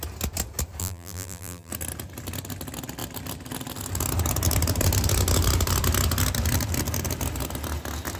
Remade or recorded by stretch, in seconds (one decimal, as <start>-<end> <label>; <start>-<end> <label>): 0.0-0.8 recorded; 0.8-1.7 remade; 1.7-8.2 recorded